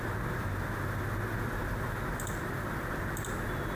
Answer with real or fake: real